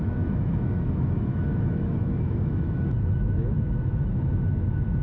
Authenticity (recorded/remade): remade